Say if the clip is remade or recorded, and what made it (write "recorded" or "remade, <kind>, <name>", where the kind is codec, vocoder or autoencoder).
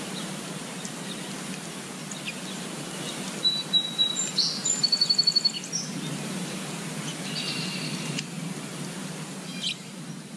recorded